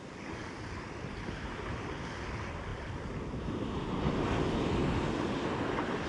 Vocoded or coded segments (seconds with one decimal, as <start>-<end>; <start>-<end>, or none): none